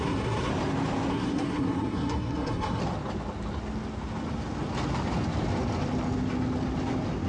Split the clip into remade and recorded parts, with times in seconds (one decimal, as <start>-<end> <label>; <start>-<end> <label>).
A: 0.0-0.5 remade; 0.5-1.1 recorded; 1.1-2.8 remade; 2.8-7.3 recorded